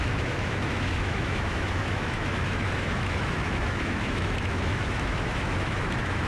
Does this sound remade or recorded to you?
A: remade